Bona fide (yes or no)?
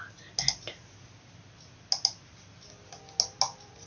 yes